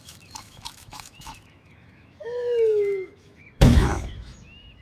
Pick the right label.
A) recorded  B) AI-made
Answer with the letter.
B